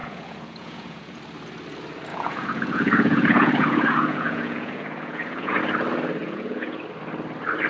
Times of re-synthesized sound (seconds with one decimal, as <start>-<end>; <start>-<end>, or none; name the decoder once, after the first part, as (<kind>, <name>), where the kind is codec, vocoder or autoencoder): 0.0-1.2 (vocoder, Vocos); 2.1-5.6; 6.2-6.8